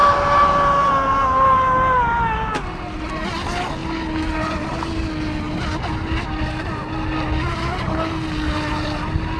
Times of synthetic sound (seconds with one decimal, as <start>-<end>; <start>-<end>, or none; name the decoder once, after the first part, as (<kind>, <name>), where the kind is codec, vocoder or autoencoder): none